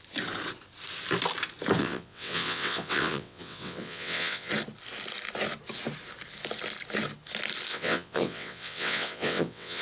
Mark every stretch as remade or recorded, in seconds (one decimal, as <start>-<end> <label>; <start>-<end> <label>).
0.0-1.8 recorded; 1.8-4.5 remade; 4.5-7.7 recorded; 7.7-9.8 remade

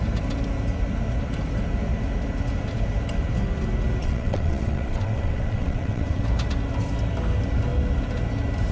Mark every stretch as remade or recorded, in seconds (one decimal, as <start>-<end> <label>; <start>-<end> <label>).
0.0-4.0 recorded; 4.0-6.2 remade; 6.2-8.7 recorded

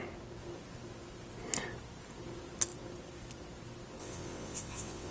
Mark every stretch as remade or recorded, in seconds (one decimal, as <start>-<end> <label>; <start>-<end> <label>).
0.0-4.0 recorded; 4.0-5.1 remade

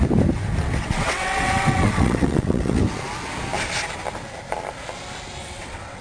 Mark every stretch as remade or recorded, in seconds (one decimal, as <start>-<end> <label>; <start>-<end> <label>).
0.0-0.6 recorded; 0.6-2.8 remade; 2.8-5.4 recorded; 5.4-6.0 remade

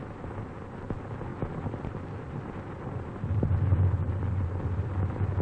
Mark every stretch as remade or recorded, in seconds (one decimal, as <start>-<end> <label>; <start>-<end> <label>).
0.0-5.4 recorded

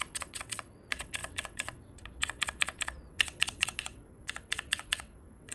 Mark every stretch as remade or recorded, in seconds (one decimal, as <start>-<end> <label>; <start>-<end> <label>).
0.0-5.5 remade

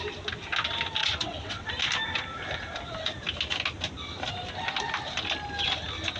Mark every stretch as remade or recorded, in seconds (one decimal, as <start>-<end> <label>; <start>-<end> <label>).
0.0-1.0 recorded; 1.0-1.7 remade; 1.7-6.2 recorded